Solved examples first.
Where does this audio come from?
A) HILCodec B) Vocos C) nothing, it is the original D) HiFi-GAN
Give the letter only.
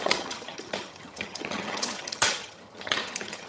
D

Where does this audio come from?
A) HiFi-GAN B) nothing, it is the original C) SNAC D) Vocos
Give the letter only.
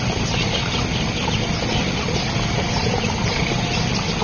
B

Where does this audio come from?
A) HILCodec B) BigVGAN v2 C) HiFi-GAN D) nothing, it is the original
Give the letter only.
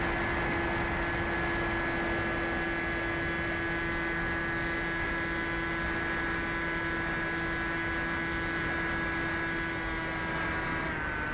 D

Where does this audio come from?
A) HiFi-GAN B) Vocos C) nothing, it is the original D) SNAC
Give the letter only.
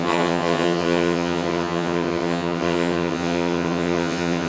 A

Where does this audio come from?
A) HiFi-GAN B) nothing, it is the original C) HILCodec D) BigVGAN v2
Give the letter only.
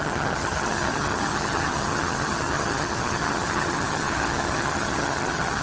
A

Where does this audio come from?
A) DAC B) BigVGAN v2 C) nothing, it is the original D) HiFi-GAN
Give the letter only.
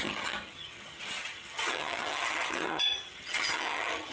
D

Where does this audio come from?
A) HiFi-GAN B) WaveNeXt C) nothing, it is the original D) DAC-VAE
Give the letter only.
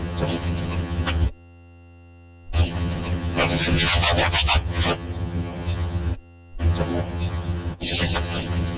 A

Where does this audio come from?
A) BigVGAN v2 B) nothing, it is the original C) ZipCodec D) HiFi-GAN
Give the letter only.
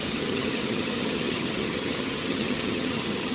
D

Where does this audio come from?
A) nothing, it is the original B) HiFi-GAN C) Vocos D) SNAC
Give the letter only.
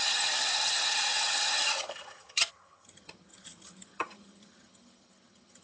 B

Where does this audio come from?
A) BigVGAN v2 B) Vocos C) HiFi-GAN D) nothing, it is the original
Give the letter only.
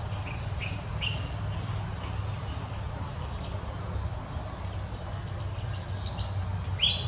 D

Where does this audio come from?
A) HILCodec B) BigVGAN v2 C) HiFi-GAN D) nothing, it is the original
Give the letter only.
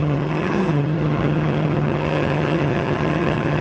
C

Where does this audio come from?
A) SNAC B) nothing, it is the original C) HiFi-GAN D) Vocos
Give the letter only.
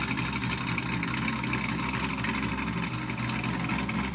B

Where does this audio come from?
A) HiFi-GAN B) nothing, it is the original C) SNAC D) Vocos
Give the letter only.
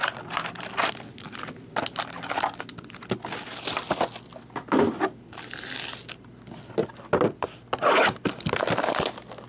B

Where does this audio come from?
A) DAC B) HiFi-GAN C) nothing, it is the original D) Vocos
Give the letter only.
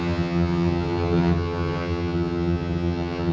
B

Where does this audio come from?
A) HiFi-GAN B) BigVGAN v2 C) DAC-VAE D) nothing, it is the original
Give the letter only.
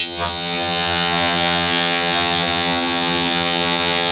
A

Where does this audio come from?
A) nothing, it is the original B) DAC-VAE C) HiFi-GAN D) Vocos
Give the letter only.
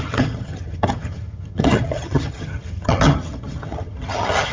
C